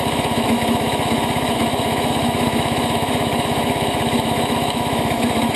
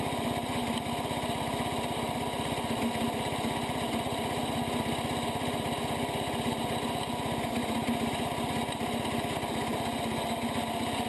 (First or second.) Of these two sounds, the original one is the second